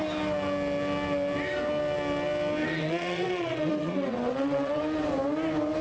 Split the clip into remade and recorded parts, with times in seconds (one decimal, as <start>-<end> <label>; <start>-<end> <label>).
0.0-2.6 recorded; 2.6-4.8 remade; 4.8-5.8 recorded